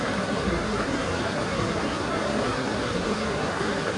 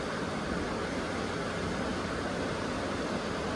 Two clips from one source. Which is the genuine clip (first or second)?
second